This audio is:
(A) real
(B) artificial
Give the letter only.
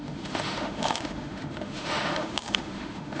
B